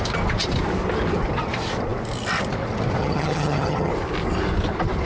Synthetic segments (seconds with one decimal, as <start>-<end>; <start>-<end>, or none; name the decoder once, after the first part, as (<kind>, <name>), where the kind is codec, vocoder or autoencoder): 3.0-3.9 (vocoder, HiFi-GAN)